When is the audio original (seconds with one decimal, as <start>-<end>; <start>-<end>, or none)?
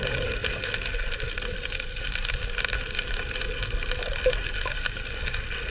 0.0-5.7